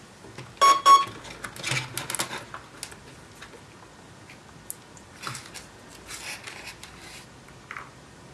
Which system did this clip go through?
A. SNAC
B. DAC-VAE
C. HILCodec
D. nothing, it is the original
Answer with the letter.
D